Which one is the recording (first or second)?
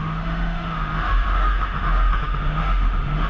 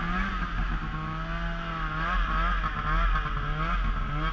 second